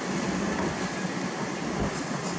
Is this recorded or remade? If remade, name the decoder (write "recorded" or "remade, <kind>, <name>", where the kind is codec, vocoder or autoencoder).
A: recorded